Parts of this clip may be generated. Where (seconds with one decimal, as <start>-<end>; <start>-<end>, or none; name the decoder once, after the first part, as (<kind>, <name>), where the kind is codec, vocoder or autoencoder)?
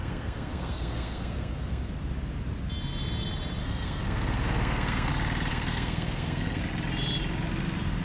0.0-1.9 (codec, SNAC); 3.6-5.1; 5.5-6.6